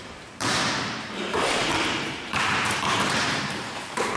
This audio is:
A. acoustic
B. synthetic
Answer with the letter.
B